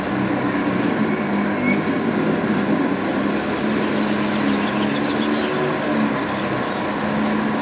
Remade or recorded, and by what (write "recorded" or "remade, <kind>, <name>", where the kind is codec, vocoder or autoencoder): recorded